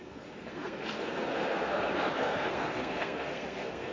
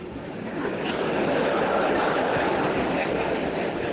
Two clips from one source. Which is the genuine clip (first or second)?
second